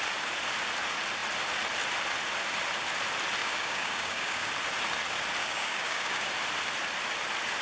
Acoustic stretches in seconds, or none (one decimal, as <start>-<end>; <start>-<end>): 0.0-3.4; 4.5-5.4; 6.3-7.6